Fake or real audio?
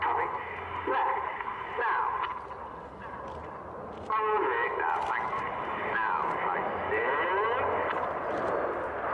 real